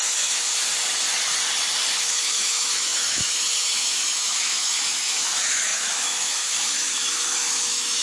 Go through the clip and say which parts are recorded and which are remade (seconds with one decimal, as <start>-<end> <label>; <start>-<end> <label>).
0.0-0.5 remade; 0.5-2.0 recorded; 2.0-8.0 remade